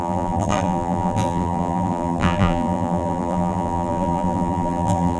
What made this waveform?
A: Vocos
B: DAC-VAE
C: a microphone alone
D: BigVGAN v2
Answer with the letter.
D